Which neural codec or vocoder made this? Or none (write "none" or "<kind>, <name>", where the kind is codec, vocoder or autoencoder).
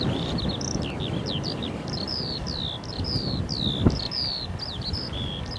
none